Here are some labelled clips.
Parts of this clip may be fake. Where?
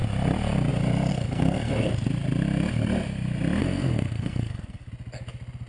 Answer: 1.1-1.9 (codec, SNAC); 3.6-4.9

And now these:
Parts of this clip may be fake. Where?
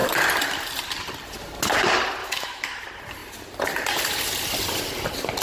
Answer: 2.2-2.7 (autoencoder, DAC-VAE)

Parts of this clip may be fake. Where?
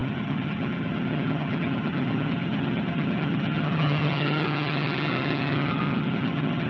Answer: 0.0-6.7 (vocoder, HiFi-GAN)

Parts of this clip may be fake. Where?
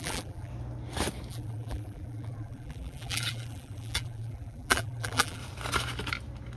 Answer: 0.0-0.5 (vocoder, BigVGAN v2); 1.3-5.4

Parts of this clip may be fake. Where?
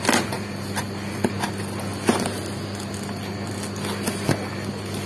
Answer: none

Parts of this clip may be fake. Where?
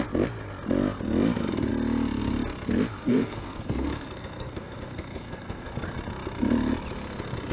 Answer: 3.0-5.7 (codec, SNAC)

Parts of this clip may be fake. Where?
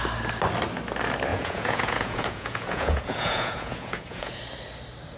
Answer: 1.3-4.4 (vocoder, Vocos)